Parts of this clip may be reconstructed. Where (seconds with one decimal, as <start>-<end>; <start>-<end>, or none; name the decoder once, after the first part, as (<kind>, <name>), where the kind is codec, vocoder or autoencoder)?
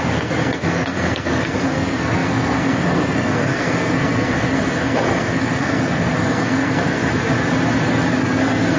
0.0-7.0 (codec, SNAC); 8.2-8.8